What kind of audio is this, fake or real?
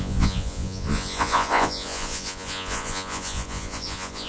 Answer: fake